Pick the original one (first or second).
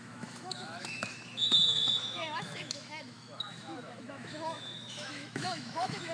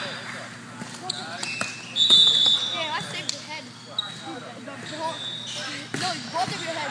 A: second